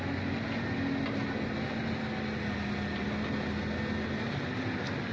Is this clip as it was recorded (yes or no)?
yes